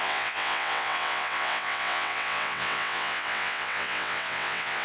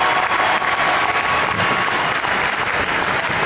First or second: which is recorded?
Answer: second